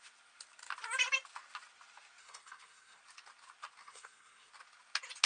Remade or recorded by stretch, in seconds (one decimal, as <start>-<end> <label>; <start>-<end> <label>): 0.0-2.2 recorded; 2.2-3.0 remade; 3.0-3.8 recorded; 3.8-4.5 remade; 4.5-5.3 recorded